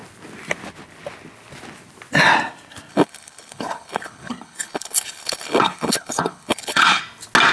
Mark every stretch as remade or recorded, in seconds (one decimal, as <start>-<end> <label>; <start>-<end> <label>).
0.0-2.9 recorded; 2.9-7.0 remade; 7.0-7.5 recorded